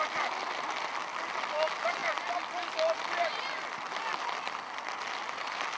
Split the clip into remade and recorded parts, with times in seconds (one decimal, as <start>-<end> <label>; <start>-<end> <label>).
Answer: 0.0-5.8 recorded